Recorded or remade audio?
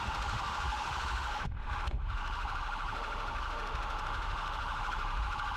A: remade